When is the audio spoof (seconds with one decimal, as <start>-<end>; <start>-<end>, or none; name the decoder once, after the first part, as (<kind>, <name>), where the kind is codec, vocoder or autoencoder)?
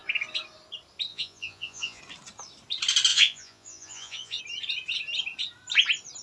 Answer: 1.1-2.0 (vocoder, Vocos); 3.1-4.4